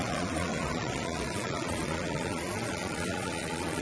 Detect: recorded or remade remade